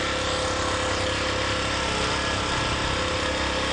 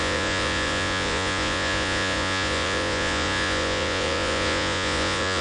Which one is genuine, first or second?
first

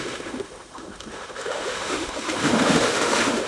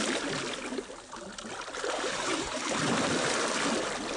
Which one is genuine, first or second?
second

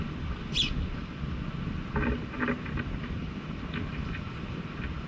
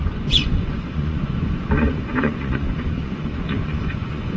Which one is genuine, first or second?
first